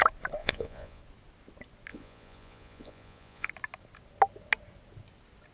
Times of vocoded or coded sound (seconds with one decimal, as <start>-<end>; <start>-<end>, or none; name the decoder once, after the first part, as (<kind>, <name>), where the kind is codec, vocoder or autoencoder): 0.4-1.0 (vocoder, Vocos); 1.9-3.5